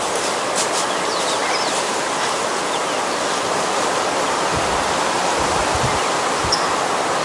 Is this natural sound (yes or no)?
yes